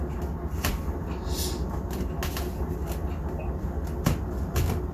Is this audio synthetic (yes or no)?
no